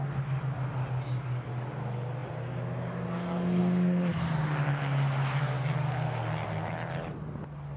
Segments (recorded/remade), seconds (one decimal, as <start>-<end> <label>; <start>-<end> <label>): 0.0-7.8 recorded